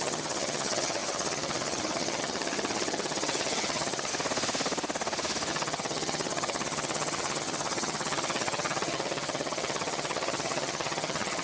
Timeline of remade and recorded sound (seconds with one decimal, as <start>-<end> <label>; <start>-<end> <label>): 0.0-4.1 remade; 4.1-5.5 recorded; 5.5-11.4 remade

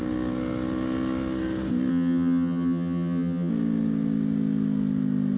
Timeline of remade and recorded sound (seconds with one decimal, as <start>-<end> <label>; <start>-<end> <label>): 0.0-1.9 recorded; 1.9-3.5 remade; 3.5-5.4 recorded

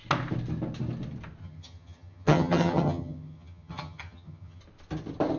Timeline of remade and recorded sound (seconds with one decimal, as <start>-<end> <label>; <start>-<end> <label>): 0.0-1.4 recorded; 1.4-4.6 remade; 4.6-5.4 recorded

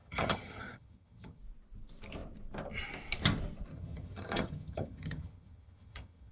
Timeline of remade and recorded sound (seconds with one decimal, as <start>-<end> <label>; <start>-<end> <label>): 0.0-1.4 remade; 1.4-3.7 recorded; 3.7-6.3 remade

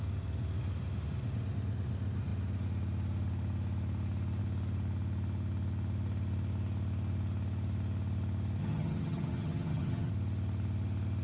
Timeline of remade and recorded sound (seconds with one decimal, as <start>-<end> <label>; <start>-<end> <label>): 0.0-8.6 recorded; 8.6-10.1 remade; 10.1-11.2 recorded

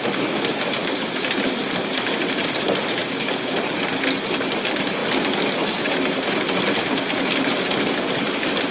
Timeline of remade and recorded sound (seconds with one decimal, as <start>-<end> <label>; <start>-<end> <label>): 0.0-8.7 recorded

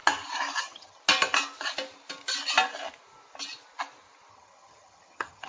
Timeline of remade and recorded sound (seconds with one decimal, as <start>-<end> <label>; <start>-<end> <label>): 0.0-0.6 recorded; 0.6-1.0 remade; 1.0-4.3 recorded; 4.3-5.5 remade